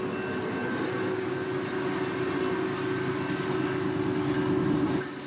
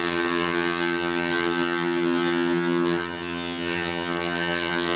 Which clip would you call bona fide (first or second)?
first